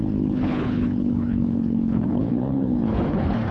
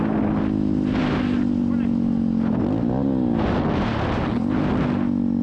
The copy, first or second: first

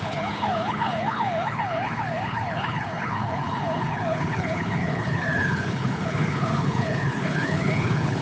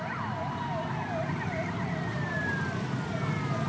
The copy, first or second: first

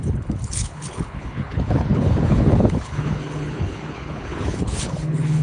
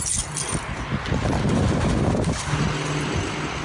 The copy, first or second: first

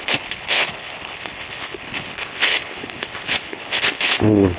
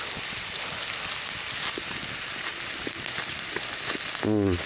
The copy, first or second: first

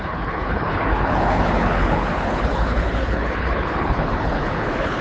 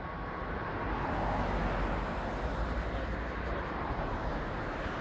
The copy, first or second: first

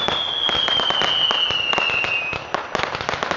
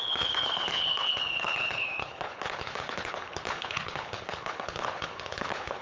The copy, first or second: second